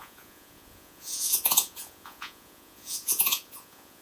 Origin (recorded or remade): remade